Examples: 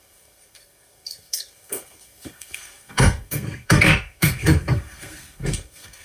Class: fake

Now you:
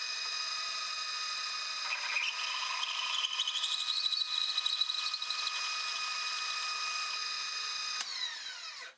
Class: fake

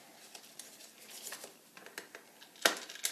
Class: real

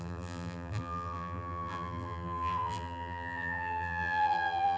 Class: fake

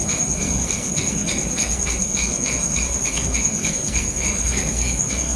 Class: fake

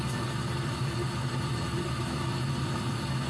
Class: real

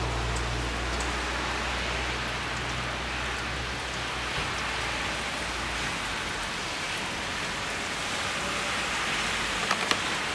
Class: real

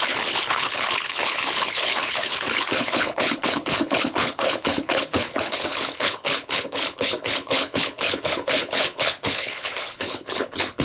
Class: fake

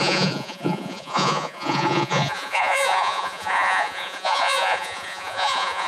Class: fake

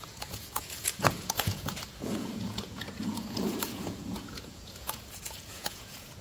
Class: fake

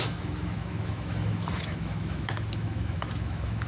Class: fake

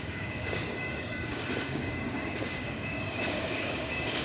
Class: fake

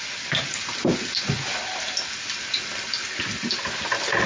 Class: real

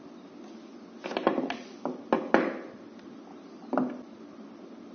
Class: real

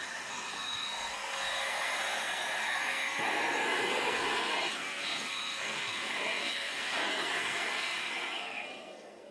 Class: fake